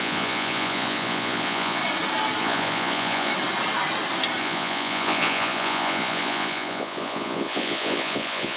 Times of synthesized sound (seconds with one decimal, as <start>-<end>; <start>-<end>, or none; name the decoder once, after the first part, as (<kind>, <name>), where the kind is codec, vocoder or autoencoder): 0.0-1.8 (vocoder, Vocos); 2.4-3.3; 4.4-8.6